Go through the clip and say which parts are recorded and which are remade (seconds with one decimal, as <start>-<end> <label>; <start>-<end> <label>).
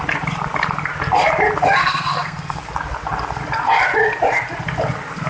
0.0-1.8 recorded; 1.8-2.6 remade; 2.6-5.3 recorded